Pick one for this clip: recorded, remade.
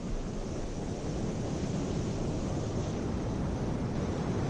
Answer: recorded